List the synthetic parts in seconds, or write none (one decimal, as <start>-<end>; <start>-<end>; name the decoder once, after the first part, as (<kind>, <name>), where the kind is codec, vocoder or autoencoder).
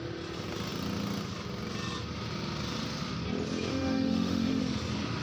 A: 3.7-4.6 (autoencoder, DAC-VAE)